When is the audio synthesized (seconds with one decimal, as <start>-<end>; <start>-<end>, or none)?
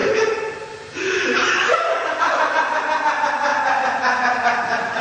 0.0-3.0; 3.5-5.0